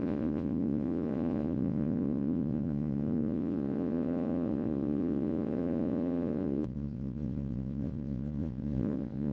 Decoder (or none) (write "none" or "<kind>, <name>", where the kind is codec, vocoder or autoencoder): vocoder, Vocos